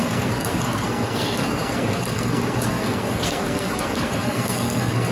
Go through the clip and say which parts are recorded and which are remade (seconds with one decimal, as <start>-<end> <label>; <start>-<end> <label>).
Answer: 0.0-5.1 remade